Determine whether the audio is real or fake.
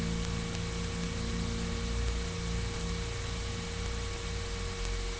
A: real